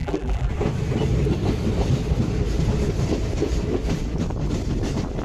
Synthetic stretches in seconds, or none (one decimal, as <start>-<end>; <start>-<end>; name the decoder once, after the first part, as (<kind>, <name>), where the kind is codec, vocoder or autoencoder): 0.0-0.5 (vocoder, BigVGAN v2)

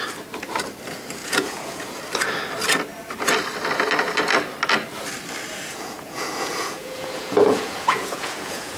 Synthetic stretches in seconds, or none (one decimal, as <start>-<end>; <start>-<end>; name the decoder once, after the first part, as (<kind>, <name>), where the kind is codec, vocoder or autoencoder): 1.2-2.0 (vocoder, Vocos); 5.5-8.8

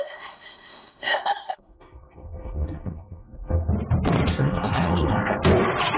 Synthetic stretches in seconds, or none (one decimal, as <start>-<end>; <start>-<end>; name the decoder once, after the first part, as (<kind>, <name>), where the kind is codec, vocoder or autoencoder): 0.0-3.7 (codec, SNAC); 4.3-5.4